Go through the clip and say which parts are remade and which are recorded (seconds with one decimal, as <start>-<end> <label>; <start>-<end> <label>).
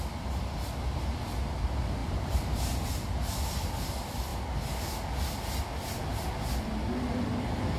0.0-2.0 recorded; 2.0-2.9 remade; 2.9-7.8 recorded